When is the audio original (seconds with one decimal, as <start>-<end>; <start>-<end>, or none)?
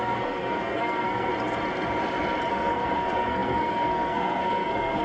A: 1.3-2.5